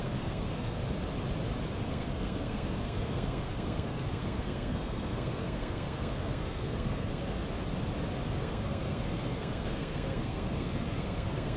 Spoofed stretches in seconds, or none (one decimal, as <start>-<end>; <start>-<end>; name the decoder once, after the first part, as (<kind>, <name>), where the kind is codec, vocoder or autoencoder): 0.0-0.8 (codec, SNAC); 1.9-7.4; 8.4-11.6

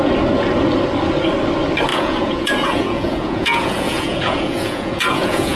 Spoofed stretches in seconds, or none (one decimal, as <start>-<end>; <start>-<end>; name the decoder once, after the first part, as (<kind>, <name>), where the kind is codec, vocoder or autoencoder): 1.9-5.6 (vocoder, Vocos)

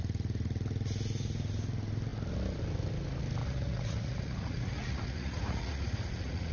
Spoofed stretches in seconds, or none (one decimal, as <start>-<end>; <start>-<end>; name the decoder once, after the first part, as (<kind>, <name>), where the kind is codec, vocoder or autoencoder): 3.4-6.5 (vocoder, Vocos)

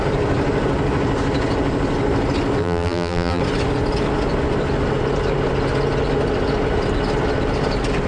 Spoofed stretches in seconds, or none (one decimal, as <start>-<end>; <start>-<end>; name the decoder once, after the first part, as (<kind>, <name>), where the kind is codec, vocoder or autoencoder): 2.6-3.4 (vocoder, BigVGAN v2)